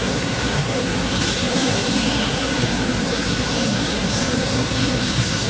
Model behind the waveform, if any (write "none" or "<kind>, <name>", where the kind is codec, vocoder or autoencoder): codec, SNAC